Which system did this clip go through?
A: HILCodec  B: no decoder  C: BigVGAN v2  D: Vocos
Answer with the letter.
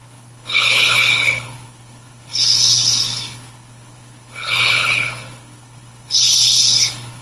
A